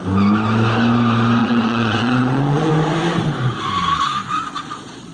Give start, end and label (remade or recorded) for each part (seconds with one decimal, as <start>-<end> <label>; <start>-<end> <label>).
0.0-1.4 recorded; 1.4-2.7 remade; 2.7-4.2 recorded; 4.2-5.1 remade